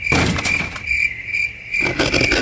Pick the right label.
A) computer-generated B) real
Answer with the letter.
B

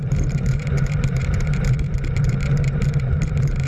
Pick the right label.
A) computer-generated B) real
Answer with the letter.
A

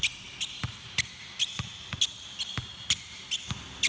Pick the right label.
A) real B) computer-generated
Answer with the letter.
A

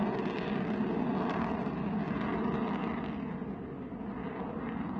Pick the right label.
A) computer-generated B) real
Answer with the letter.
B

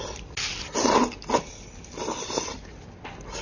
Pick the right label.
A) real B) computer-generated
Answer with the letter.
A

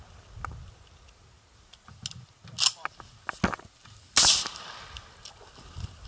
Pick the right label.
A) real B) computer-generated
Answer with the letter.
A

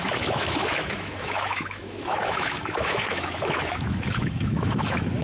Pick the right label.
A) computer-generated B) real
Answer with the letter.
A